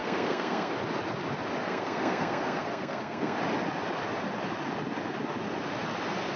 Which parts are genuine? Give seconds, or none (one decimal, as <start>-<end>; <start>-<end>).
0.7-1.6; 3.4-6.4